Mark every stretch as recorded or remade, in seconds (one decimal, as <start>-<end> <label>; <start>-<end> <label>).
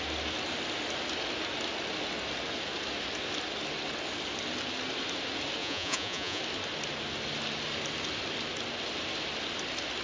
0.0-5.6 recorded; 5.6-6.4 remade; 6.4-10.0 recorded